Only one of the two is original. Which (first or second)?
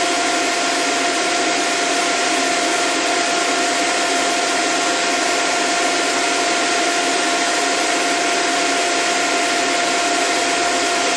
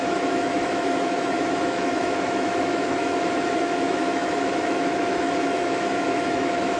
first